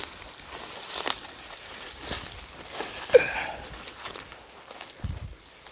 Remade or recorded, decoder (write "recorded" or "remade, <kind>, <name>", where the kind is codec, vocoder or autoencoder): recorded